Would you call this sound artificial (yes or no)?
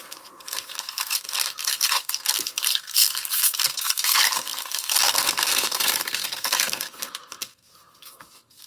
yes